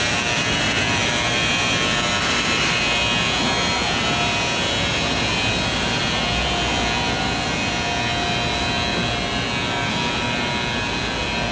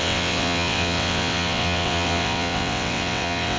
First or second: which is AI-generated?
second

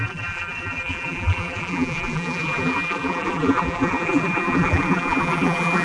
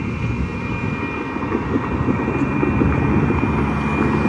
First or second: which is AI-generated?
first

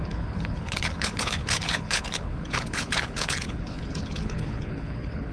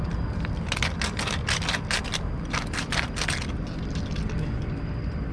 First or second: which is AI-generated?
first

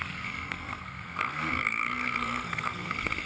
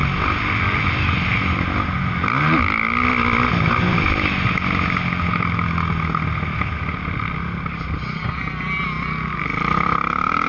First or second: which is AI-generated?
first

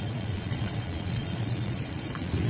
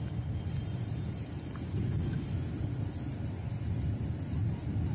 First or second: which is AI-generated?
first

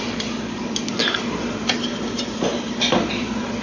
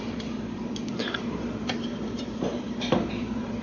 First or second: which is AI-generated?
second